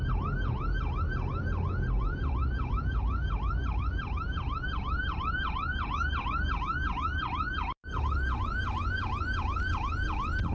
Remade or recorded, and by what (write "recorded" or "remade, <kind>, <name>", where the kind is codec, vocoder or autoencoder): recorded